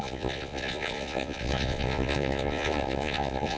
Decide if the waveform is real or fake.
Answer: fake